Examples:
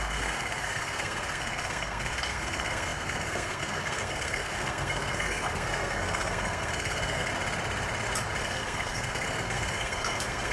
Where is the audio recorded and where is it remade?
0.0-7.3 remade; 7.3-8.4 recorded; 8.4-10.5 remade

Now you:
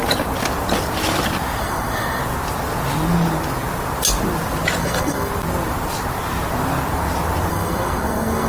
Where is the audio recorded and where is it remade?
0.0-1.6 recorded; 1.6-2.2 remade; 2.2-4.8 recorded; 4.8-5.3 remade; 5.3-7.5 recorded; 7.5-8.5 remade